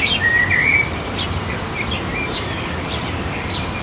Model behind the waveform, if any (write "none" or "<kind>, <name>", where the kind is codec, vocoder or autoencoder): none